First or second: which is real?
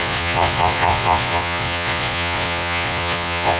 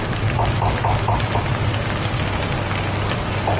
second